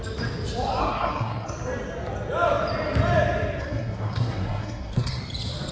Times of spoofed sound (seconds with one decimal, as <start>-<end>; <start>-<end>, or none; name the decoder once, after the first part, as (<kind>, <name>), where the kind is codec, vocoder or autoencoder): 0.8-1.5 (codec, SNAC); 3.6-5.2